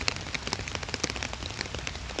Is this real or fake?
real